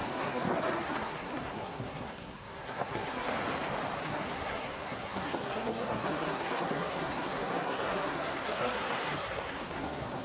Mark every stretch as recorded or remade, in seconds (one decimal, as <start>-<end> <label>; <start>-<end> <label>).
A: 0.0-3.3 remade; 3.3-4.0 recorded; 4.0-10.2 remade